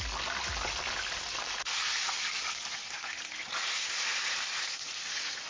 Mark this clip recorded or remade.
recorded